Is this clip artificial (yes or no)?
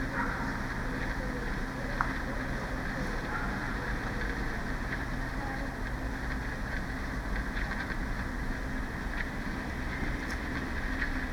no